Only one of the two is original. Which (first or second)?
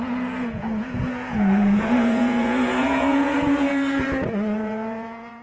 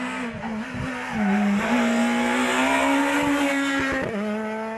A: second